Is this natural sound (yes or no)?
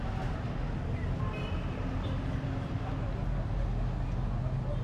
yes